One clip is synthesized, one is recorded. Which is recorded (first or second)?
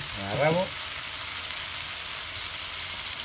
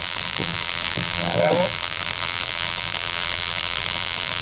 first